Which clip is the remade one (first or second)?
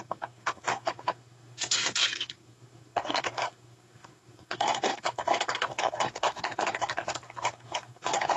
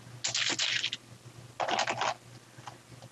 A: first